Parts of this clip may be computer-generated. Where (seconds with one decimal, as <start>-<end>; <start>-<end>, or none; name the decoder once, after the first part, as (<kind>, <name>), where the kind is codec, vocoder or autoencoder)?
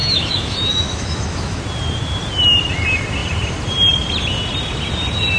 0.0-1.6 (autoencoder, DAC-VAE)